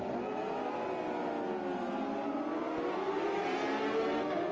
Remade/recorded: recorded